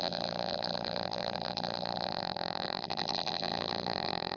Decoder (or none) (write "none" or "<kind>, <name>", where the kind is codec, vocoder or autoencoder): vocoder, BigVGAN v2